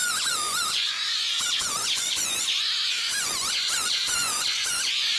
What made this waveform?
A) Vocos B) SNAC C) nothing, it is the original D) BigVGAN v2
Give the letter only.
A